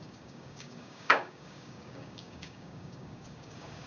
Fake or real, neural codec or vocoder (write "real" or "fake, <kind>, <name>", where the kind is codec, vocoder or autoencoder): fake, codec, DAC